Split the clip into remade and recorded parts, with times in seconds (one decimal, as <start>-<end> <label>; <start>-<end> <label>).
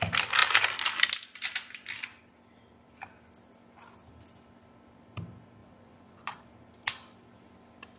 0.0-5.6 recorded; 5.6-6.4 remade; 6.4-8.0 recorded